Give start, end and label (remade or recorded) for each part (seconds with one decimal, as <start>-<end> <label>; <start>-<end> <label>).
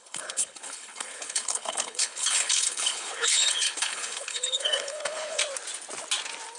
0.0-5.4 remade; 5.4-6.6 recorded